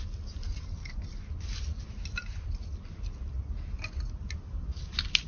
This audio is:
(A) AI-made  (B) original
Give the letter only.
B